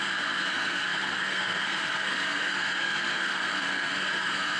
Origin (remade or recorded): remade